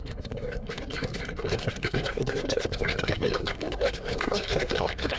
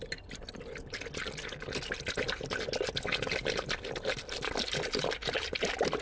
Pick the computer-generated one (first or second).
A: first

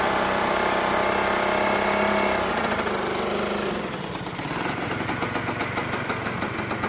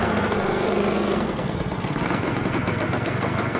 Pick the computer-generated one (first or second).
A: second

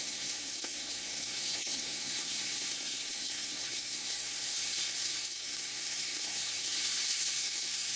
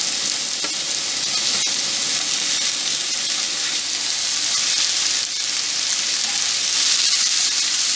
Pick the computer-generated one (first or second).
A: first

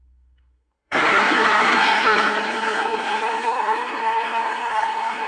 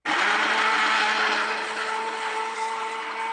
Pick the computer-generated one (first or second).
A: first